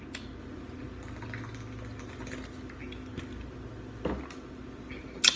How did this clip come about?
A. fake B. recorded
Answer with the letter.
B